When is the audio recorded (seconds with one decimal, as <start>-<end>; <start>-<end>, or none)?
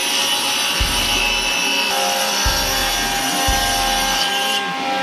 0.0-5.0